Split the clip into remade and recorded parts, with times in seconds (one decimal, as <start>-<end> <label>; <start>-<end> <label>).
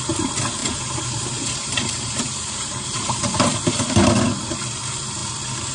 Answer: 0.0-0.6 recorded; 0.6-4.0 remade; 4.0-5.7 recorded